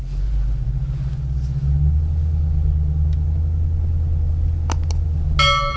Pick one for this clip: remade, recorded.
recorded